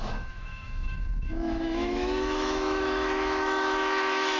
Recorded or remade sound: remade